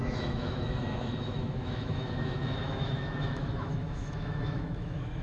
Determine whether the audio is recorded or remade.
remade